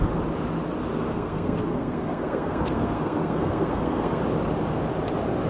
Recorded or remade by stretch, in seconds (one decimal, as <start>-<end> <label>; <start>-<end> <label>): 0.0-0.9 recorded; 0.9-4.2 remade; 4.2-5.5 recorded

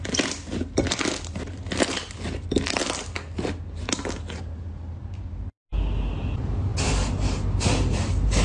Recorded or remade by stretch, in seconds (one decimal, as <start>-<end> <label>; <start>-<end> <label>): 0.0-8.4 recorded